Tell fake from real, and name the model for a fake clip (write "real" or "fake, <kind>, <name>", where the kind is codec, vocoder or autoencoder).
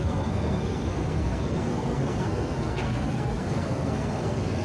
fake, codec, SNAC